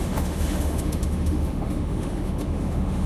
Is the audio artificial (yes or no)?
yes